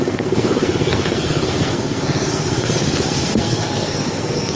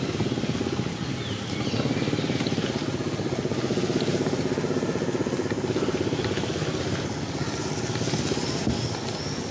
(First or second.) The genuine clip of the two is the second